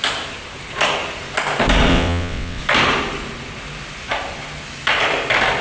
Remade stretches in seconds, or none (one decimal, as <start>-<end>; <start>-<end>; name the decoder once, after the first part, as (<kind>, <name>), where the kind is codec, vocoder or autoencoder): 1.9-2.6 (vocoder, WaveNeXt)